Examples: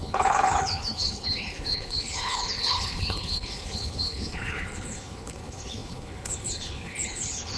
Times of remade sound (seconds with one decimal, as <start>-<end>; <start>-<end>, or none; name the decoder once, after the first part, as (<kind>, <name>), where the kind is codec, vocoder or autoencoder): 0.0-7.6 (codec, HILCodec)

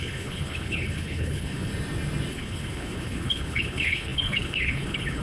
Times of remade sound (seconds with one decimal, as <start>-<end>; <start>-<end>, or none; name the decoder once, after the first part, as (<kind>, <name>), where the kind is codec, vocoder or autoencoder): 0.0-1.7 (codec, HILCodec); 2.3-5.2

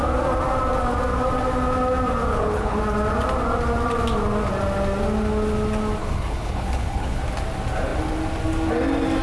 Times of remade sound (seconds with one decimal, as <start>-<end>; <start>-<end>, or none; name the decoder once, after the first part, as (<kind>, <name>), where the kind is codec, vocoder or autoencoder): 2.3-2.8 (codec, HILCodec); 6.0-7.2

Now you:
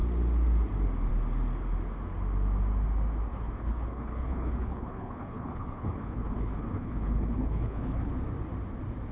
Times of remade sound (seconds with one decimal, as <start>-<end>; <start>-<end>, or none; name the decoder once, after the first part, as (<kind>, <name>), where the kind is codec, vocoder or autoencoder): 3.3-8.1 (codec, HILCodec)

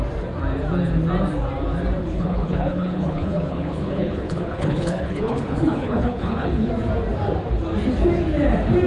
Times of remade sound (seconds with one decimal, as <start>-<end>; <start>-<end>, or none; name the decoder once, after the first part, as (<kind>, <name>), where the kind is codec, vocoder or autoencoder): 2.0-6.7 (codec, HILCodec)

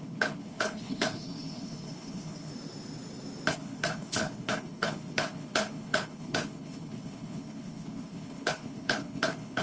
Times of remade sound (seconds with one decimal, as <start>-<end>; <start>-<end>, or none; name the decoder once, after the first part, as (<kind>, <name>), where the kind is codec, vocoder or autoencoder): 0.0-2.5 (codec, HILCodec); 3.5-9.6

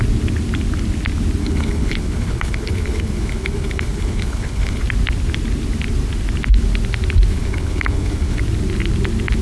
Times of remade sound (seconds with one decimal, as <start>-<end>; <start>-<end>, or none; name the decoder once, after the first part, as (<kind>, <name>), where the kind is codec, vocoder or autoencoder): 1.4-4.8 (codec, HILCodec); 7.3-8.4

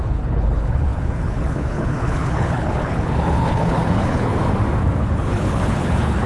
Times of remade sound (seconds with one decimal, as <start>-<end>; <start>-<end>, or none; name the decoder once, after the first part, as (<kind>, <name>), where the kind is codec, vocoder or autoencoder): 0.0-4.4 (codec, HILCodec); 5.0-6.3